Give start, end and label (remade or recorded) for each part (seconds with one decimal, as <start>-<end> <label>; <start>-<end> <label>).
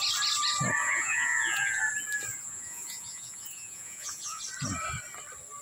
0.0-0.8 recorded; 0.8-1.8 remade; 1.8-2.3 recorded; 2.3-4.4 remade; 4.4-5.6 recorded